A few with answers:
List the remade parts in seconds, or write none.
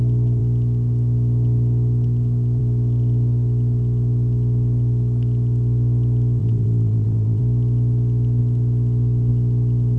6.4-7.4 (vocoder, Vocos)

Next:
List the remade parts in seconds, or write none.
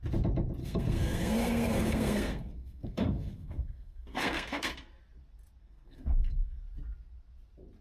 0.6-4.7 (codec, SNAC); 5.6-6.6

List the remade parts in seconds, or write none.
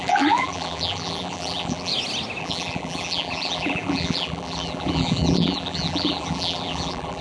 0.0-1.9 (vocoder, BigVGAN v2); 2.4-7.2